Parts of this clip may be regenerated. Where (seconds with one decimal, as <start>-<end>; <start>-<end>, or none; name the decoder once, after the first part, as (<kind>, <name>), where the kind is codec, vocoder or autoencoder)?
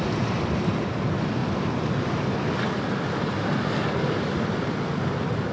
none